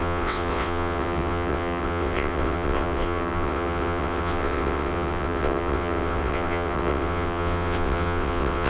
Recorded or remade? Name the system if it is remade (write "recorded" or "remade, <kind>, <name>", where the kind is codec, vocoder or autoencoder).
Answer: remade, vocoder, WaveNeXt